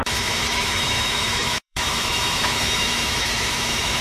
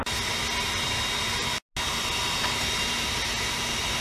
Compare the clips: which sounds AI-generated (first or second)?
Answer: first